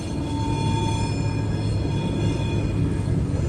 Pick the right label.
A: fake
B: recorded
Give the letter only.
B